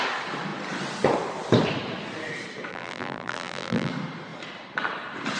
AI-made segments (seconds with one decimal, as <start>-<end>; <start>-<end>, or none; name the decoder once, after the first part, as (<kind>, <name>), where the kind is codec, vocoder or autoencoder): 2.7-3.9 (vocoder, BigVGAN v2)